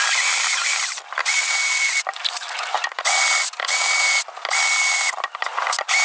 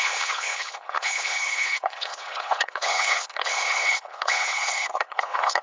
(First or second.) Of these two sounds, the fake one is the second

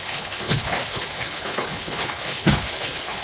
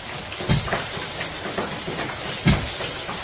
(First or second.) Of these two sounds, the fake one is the first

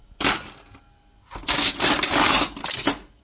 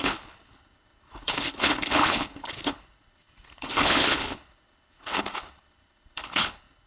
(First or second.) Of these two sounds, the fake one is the second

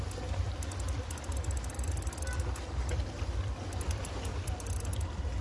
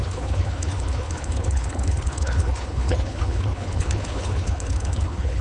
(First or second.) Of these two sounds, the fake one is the second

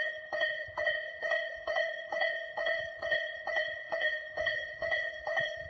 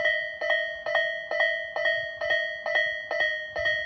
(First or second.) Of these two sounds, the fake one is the first